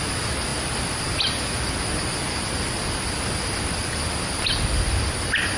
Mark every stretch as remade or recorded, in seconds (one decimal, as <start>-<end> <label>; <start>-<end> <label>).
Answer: 0.0-5.6 recorded